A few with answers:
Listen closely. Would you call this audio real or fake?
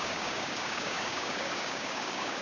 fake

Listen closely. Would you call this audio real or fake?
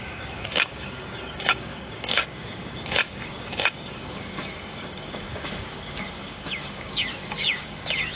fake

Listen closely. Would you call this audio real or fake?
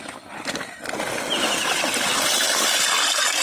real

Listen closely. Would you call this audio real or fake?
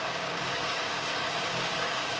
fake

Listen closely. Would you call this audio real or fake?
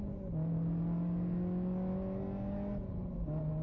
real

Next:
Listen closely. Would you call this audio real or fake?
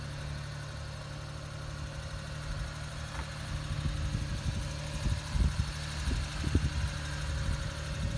real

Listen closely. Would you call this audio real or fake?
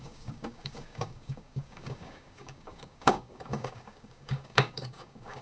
fake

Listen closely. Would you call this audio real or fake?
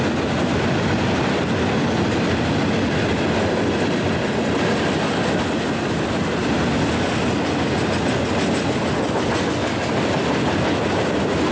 real